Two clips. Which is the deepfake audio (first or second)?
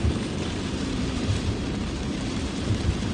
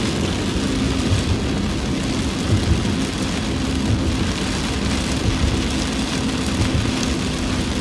first